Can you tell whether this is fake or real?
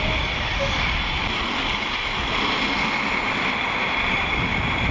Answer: real